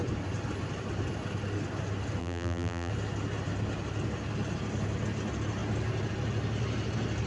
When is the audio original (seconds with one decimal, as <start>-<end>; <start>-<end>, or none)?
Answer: 0.0-2.2; 2.9-7.3